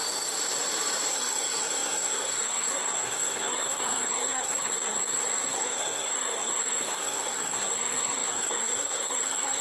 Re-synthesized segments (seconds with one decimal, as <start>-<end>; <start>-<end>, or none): 1.1-9.6